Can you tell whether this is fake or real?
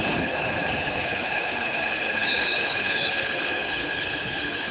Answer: fake